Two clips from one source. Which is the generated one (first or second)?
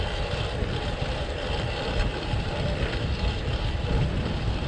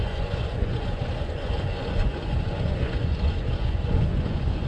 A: second